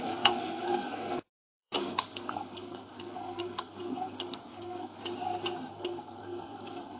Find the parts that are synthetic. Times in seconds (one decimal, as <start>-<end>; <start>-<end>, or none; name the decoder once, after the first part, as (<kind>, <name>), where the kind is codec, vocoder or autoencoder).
0.0-5.0 (codec, SNAC); 5.7-7.0